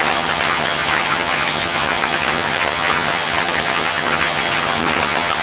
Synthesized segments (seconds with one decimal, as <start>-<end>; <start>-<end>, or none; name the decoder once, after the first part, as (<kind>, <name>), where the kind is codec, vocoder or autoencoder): 0.0-5.4 (vocoder, HiFi-GAN)